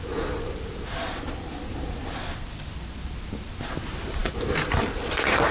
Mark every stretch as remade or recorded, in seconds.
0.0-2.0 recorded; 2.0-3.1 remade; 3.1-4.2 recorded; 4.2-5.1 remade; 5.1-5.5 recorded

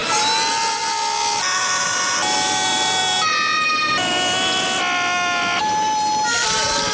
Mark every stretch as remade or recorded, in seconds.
0.0-6.9 recorded

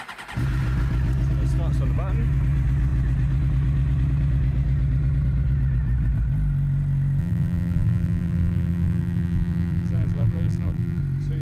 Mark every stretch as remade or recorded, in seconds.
0.0-7.2 recorded; 7.2-11.0 remade; 11.0-11.4 recorded

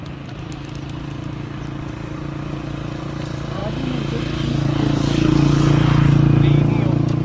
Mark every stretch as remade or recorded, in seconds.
0.0-7.2 recorded

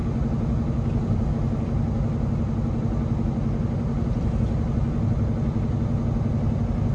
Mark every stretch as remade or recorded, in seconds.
0.0-6.9 recorded

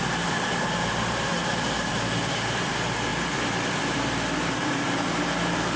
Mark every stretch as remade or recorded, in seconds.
0.0-5.8 recorded

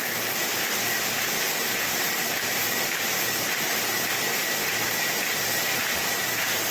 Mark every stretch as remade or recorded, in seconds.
0.0-6.7 remade

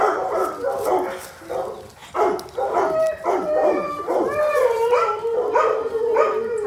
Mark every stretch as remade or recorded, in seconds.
0.0-4.5 recorded; 4.5-6.2 remade; 6.2-6.7 recorded